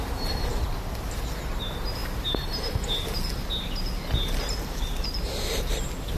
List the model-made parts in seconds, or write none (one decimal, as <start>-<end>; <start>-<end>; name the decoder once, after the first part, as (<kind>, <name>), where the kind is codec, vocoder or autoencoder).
none